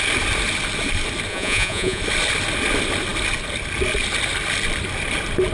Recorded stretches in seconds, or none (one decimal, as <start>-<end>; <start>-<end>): 0.0-1.3; 2.0-5.5